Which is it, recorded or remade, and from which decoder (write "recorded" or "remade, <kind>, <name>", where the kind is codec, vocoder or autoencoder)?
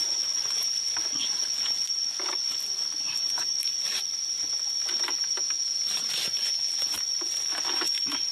recorded